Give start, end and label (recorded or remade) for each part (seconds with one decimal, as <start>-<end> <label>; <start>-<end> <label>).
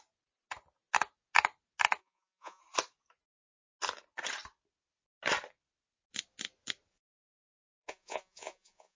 0.0-2.0 recorded; 2.0-2.6 remade; 2.6-6.9 recorded; 6.9-9.0 remade